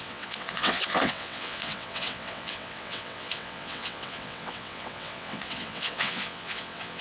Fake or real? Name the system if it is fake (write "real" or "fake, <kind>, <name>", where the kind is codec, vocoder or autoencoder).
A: fake, vocoder, WaveNeXt